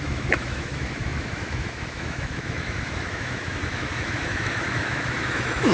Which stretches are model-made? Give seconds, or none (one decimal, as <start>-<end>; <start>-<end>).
0.0-5.7